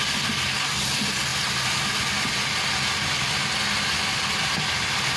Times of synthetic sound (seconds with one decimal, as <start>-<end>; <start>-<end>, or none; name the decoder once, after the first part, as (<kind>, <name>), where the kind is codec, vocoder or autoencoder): none